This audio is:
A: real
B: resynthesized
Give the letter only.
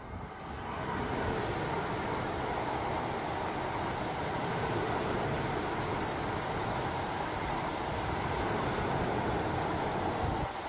A